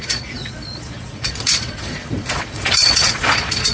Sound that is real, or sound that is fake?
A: fake